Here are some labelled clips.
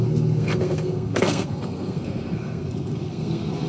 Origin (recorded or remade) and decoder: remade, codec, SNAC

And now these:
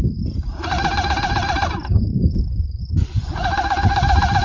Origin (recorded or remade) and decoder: remade, vocoder, BigVGAN v2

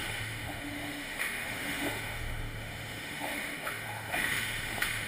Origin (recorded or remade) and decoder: remade, autoencoder, DAC-VAE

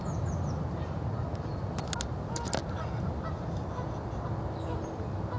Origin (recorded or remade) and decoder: recorded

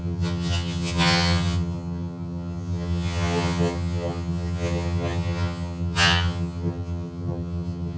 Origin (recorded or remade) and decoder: remade, vocoder, HiFi-GAN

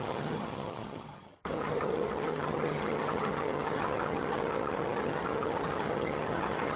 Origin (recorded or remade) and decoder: remade, vocoder, HiFi-GAN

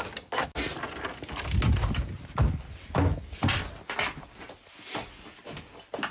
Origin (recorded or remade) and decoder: recorded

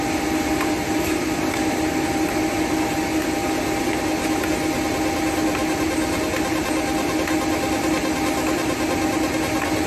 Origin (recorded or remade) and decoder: recorded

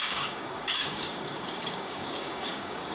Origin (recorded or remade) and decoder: remade, codec, DAC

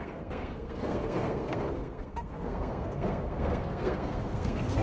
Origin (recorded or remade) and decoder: remade, codec, SNAC